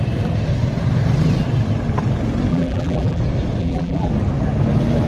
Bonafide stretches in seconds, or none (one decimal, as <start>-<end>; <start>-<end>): 0.0-2.5; 3.2-3.6; 4.1-5.1

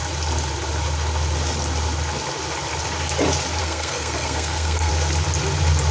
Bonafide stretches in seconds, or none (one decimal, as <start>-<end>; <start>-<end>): 0.0-3.6; 4.9-5.9

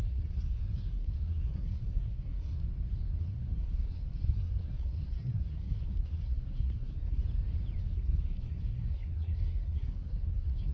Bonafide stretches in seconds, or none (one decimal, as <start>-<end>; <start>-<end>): 2.6-3.2; 7.2-7.8